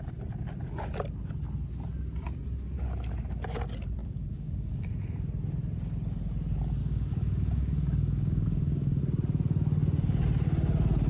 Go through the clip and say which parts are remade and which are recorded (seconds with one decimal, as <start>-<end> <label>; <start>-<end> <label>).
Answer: 0.0-4.0 recorded; 4.0-4.9 remade; 4.9-6.8 recorded; 6.8-9.0 remade; 9.0-11.1 recorded

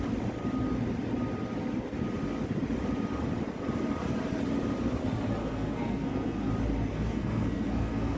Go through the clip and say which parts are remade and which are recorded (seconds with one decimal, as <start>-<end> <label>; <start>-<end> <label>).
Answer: 0.0-5.4 recorded; 5.4-6.5 remade; 6.5-6.9 recorded; 6.9-8.2 remade